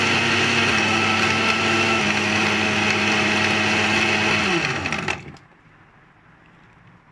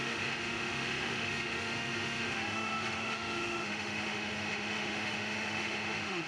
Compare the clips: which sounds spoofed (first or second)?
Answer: second